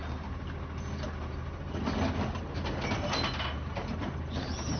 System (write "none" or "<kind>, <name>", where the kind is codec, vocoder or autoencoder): none